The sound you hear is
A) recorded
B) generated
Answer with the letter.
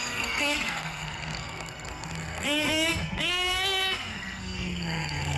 B